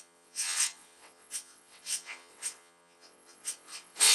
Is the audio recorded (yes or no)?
no